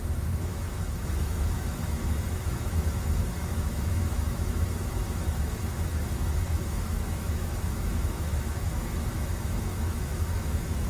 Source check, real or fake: fake